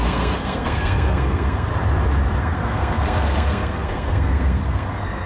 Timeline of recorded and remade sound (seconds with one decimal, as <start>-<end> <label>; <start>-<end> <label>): 0.0-1.7 remade; 1.7-2.4 recorded; 2.4-5.3 remade